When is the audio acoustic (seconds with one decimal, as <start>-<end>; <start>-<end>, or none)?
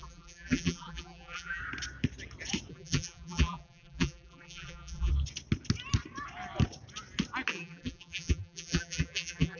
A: 1.6-2.7; 5.1-7.5